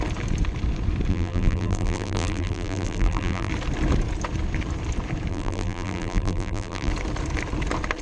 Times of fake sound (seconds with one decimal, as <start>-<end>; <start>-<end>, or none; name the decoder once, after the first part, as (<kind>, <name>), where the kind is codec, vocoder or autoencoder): 1.1-3.5 (vocoder, BigVGAN v2); 5.3-6.9